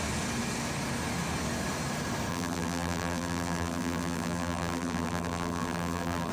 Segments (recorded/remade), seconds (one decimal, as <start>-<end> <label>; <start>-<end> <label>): 0.0-2.3 recorded; 2.3-6.3 remade